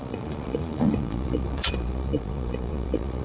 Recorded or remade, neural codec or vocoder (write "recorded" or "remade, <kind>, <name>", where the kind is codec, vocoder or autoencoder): remade, vocoder, Vocos